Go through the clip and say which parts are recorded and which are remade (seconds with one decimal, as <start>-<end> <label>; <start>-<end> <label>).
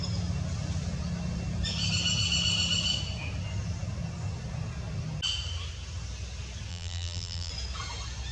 0.0-6.7 recorded; 6.7-7.5 remade; 7.5-8.3 recorded